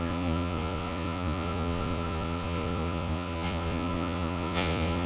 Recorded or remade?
remade